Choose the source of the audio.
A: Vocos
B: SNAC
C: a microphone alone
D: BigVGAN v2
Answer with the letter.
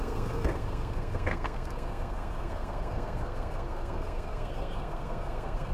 B